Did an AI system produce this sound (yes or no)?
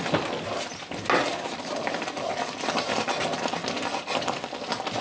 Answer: no